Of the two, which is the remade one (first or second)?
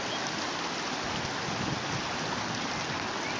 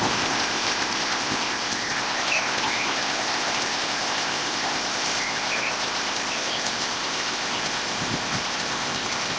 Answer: second